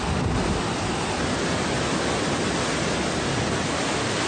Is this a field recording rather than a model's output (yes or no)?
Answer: yes